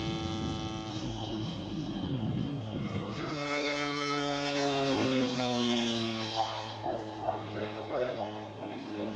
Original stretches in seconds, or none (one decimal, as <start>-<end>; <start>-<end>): 0.0-0.9